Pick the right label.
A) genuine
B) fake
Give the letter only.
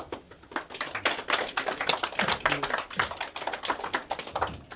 A